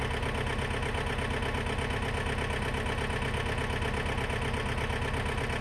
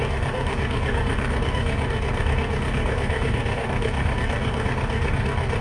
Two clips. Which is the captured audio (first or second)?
first